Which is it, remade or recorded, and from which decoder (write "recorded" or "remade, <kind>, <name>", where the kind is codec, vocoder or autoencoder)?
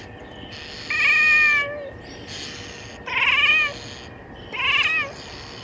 recorded